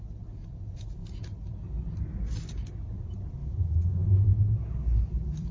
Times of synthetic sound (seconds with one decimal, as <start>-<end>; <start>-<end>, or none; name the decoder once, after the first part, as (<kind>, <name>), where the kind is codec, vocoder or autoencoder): 3.4-4.4 (vocoder, Vocos)